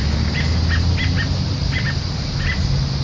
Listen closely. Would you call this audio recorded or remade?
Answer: recorded